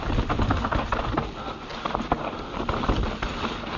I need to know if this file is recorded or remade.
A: recorded